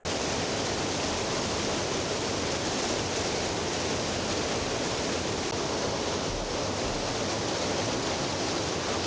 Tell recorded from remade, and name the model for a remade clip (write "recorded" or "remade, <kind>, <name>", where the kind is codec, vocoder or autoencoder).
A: recorded